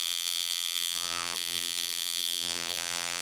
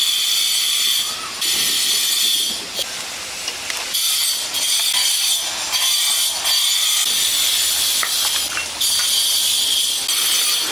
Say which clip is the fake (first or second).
first